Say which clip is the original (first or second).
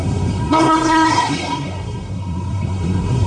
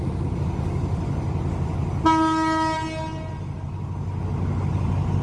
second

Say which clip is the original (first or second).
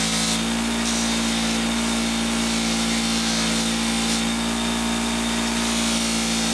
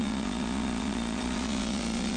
first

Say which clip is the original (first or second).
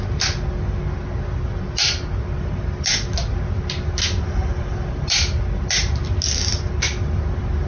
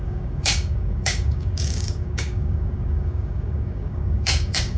first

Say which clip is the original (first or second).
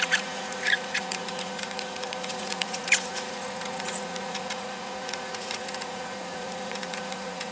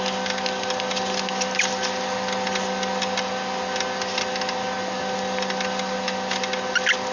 second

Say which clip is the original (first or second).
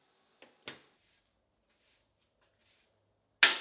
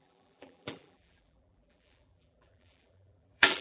first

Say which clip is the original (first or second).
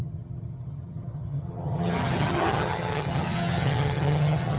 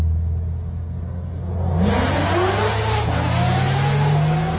second